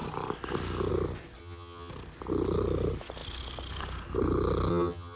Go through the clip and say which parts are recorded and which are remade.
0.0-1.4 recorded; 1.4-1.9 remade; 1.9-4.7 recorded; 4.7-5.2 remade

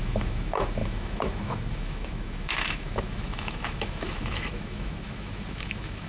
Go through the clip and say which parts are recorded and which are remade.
0.0-6.1 remade